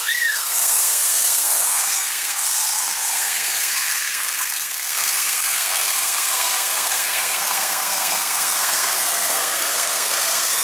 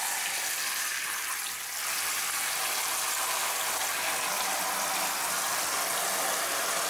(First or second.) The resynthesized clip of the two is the first